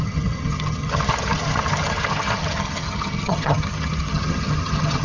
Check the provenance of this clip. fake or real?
fake